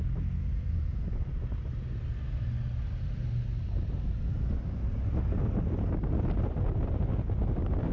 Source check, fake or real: real